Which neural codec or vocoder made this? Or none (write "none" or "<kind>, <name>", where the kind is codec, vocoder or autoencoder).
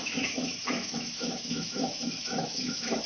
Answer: autoencoder, DAC-VAE